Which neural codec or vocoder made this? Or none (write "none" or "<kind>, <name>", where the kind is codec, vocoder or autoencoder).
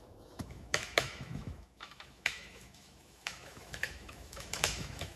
autoencoder, DAC-VAE